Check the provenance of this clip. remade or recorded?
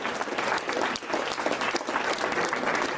recorded